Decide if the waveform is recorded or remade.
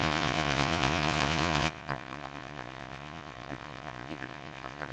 remade